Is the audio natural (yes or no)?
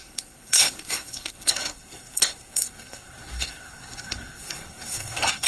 no